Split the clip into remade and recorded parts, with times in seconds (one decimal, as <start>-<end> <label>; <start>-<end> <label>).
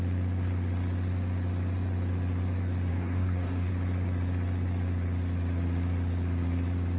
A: 0.0-2.9 recorded; 2.9-3.7 remade; 3.7-7.0 recorded